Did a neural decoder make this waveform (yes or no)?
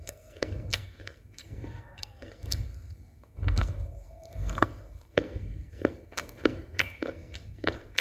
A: yes